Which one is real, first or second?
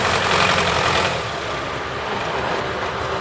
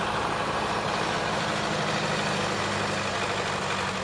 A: second